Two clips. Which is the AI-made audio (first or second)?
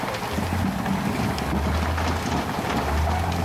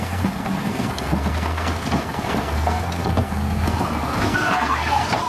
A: second